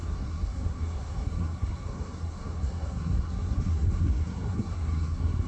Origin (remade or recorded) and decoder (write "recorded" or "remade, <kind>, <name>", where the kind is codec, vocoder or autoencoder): remade, codec, SNAC